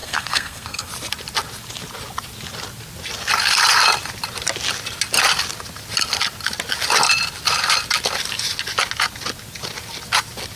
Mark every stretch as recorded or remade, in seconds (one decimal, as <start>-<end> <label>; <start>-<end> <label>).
0.0-0.9 remade; 0.9-10.6 recorded

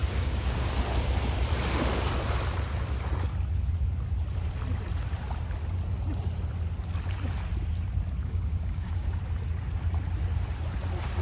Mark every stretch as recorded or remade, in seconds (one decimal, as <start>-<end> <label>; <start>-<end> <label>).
0.0-0.7 remade; 0.7-8.2 recorded; 8.2-9.2 remade; 9.2-11.2 recorded